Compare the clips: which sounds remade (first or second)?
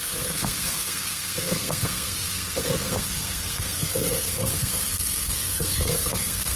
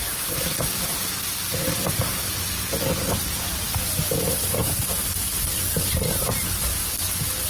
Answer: first